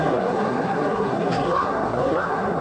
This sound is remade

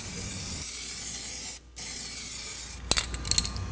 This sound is recorded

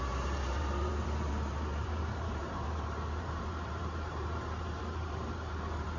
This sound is remade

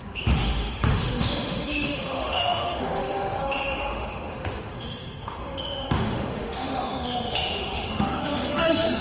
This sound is remade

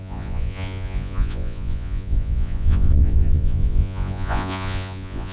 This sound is remade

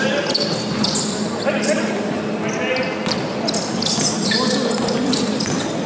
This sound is recorded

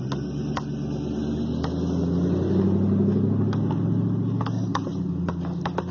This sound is recorded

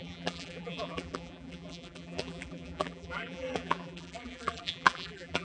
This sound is remade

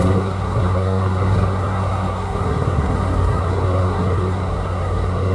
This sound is remade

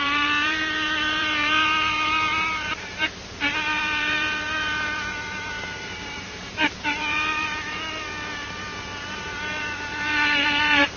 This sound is remade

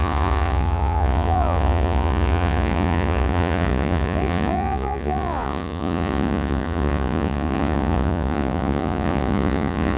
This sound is remade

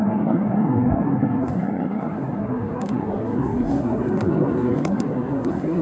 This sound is remade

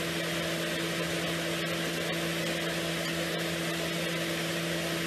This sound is recorded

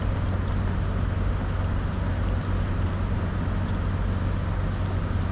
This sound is recorded